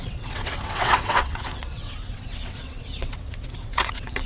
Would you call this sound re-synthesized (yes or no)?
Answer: yes